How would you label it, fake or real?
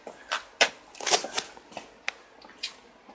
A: real